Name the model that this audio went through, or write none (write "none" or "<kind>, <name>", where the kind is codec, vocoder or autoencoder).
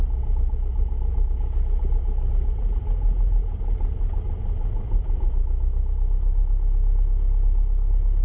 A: none